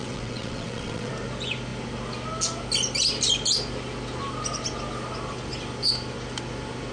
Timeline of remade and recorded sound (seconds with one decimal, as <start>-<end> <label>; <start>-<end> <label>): 0.0-1.1 remade; 1.1-6.9 recorded